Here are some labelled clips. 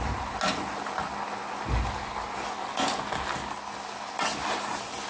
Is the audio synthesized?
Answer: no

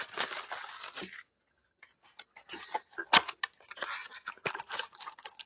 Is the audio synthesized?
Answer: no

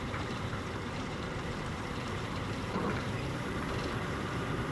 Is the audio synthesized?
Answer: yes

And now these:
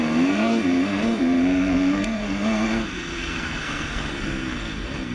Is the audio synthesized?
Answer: yes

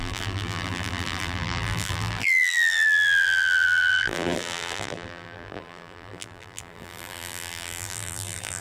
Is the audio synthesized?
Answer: yes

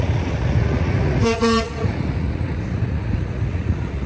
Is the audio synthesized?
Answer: yes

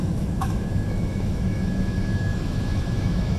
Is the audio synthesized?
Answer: yes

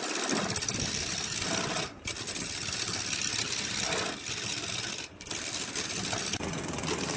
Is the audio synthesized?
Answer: no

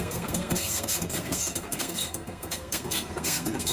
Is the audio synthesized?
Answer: yes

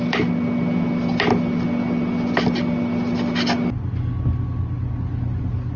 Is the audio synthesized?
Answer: no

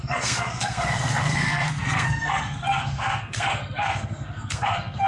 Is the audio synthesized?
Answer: yes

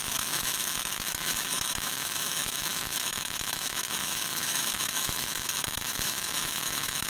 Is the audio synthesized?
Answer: yes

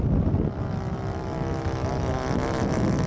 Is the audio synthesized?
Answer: no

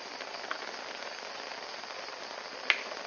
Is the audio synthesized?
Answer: no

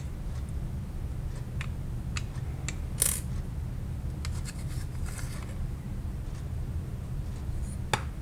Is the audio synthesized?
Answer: no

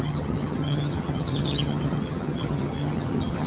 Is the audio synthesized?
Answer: yes